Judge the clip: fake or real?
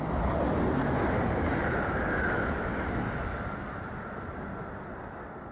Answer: real